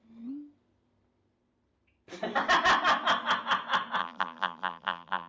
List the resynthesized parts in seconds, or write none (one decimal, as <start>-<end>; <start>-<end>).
4.0-5.3